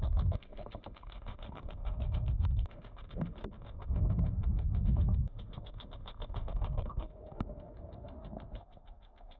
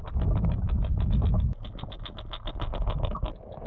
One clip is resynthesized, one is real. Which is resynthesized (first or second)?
first